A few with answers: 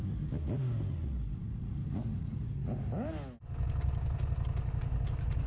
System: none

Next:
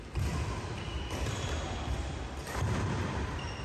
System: none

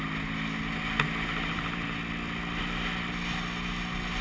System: none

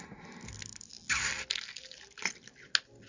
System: none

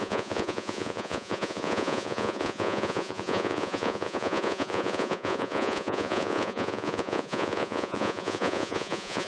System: vocoder, Vocos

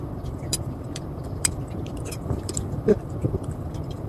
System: vocoder, BigVGAN v2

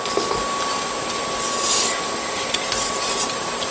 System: none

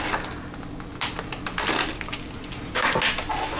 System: none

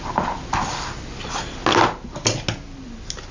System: none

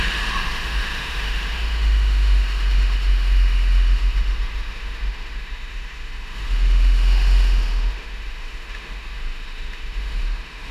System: autoencoder, DAC-VAE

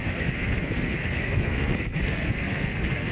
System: codec, SNAC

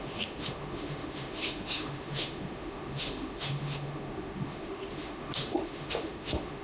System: autoencoder, DAC-VAE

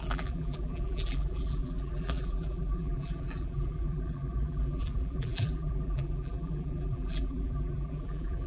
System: vocoder, BigVGAN v2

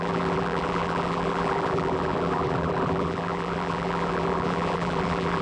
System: vocoder, BigVGAN v2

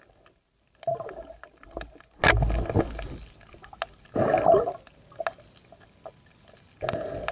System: none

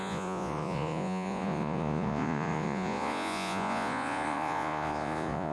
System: vocoder, Vocos